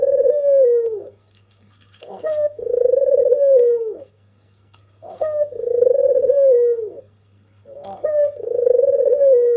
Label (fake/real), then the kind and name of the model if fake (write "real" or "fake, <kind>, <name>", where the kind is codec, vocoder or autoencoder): fake, codec, SNAC